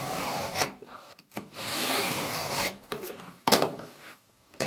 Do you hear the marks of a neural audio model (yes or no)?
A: yes